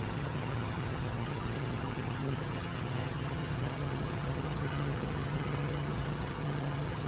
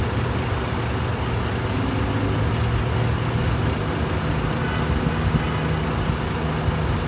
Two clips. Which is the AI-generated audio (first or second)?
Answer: first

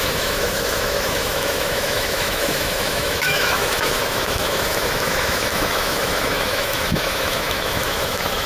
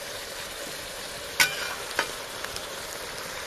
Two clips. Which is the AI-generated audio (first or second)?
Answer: first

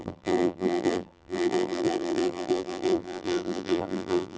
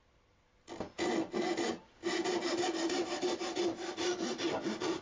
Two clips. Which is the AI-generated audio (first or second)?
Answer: first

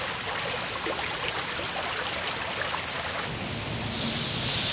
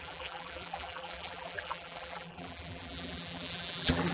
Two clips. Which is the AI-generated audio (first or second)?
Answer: second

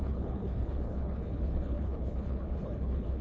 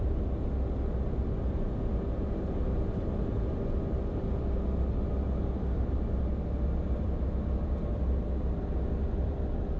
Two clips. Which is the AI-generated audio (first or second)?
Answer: first